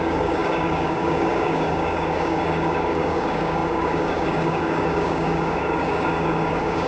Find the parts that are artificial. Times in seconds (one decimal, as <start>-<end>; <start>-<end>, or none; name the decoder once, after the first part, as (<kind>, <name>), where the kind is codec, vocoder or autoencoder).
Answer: 0.0-6.9 (codec, DAC)